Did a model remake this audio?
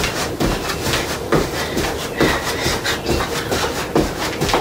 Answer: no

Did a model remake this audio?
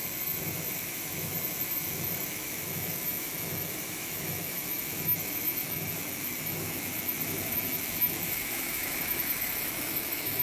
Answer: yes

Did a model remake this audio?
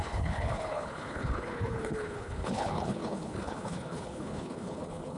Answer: yes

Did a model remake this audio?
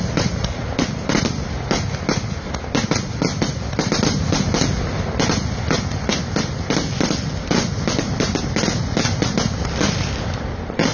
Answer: no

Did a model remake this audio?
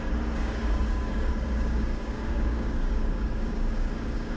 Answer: yes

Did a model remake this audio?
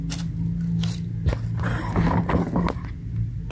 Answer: no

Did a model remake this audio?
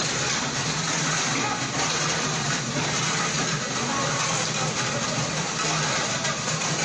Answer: no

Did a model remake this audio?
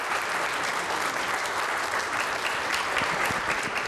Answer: yes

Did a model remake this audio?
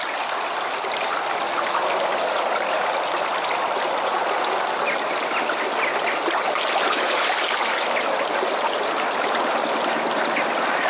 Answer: no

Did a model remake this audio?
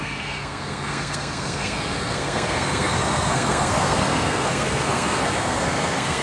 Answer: yes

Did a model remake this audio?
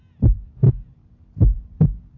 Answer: no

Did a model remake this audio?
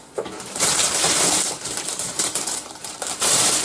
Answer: yes